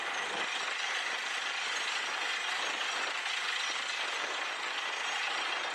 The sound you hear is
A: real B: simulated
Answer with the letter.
A